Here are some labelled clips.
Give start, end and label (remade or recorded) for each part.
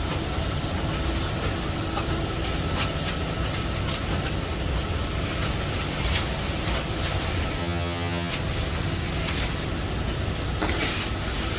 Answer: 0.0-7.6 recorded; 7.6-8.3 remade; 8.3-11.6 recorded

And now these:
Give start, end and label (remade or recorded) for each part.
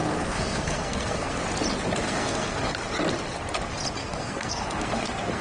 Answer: 0.0-1.4 remade; 1.4-2.0 recorded; 2.0-2.6 remade; 2.6-4.0 recorded; 4.0-5.4 remade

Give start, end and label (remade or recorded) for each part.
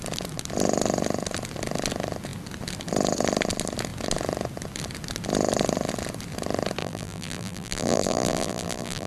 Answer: 0.0-6.8 recorded; 6.8-9.1 remade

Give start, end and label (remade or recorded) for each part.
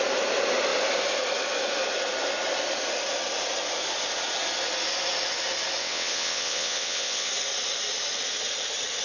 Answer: 0.0-5.8 recorded; 5.8-7.3 remade; 7.3-9.0 recorded